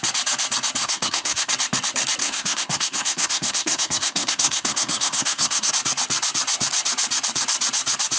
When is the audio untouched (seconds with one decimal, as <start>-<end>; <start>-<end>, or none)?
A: 0.0-0.8; 1.5-2.2; 5.7-8.2